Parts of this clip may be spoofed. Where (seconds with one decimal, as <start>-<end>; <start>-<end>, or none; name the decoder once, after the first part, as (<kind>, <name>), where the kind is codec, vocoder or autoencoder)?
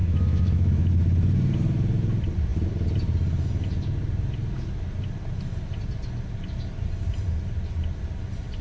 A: 0.0-0.9 (autoencoder, DAC-VAE)